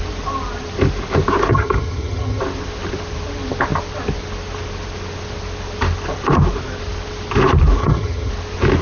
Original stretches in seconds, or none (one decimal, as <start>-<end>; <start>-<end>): 0.0-1.5; 2.4-7.8; 8.3-8.8